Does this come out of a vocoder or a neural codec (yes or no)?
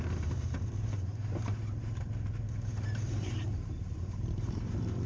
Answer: yes